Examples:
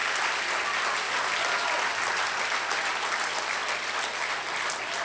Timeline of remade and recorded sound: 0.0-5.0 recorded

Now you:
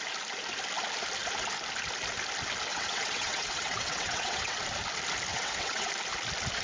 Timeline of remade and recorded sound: 0.0-2.7 recorded; 2.7-4.6 remade; 4.6-5.3 recorded; 5.3-5.9 remade; 5.9-6.6 recorded

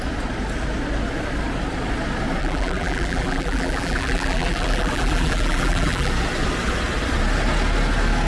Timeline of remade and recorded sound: 0.0-2.4 recorded; 2.4-6.1 remade; 6.1-8.3 recorded

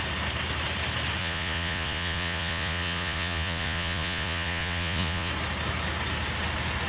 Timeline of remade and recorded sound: 0.0-1.2 recorded; 1.2-5.3 remade; 5.3-6.9 recorded

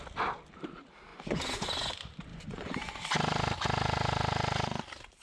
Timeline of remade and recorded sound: 0.0-1.1 recorded; 1.1-1.9 remade; 1.9-2.3 recorded; 2.3-3.0 remade; 3.0-5.2 recorded

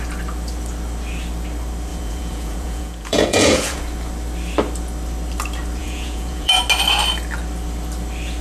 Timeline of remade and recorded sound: 0.0-1.9 recorded; 1.9-3.8 remade; 3.8-5.8 recorded; 5.8-6.6 remade; 6.6-8.4 recorded